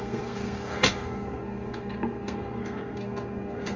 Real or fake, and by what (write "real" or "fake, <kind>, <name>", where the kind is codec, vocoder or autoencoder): fake, codec, SNAC